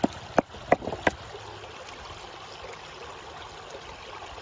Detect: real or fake real